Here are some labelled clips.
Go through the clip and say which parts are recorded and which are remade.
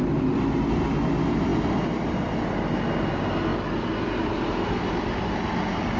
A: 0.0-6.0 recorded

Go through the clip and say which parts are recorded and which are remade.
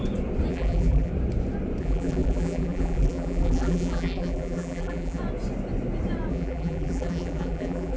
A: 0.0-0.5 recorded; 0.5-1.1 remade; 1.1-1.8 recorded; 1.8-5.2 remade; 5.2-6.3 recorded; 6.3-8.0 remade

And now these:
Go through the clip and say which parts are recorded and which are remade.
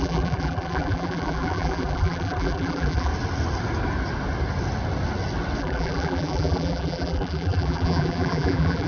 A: 0.0-3.1 remade; 3.1-5.6 recorded; 5.6-8.9 remade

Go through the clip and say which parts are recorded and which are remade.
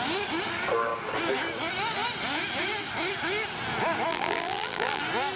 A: 0.0-4.1 recorded; 4.1-5.0 remade; 5.0-5.4 recorded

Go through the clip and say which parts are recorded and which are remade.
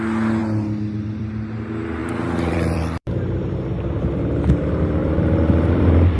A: 0.0-0.4 recorded; 0.4-1.3 remade; 1.3-2.0 recorded; 2.0-3.5 remade; 3.5-5.0 recorded; 5.0-6.2 remade